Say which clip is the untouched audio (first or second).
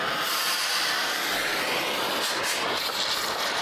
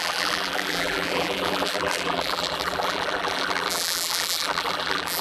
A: first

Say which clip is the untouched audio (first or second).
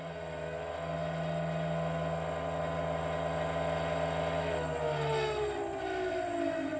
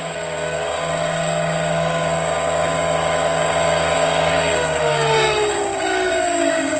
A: first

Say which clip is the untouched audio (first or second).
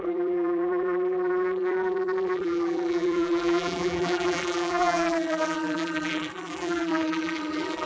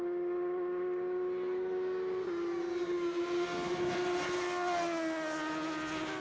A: second